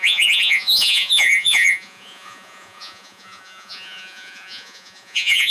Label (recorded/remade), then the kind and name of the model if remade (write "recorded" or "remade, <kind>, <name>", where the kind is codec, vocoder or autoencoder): remade, vocoder, Vocos